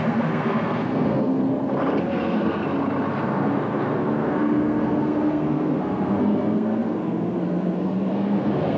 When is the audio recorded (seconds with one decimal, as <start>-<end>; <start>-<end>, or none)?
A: 1.4-2.0; 2.6-3.1